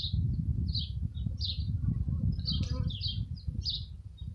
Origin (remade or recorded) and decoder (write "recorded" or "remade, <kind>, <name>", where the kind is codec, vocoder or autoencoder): recorded